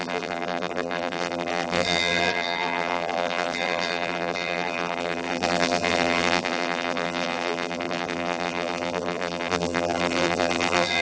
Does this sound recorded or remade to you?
remade